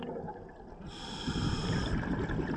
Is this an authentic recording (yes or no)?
yes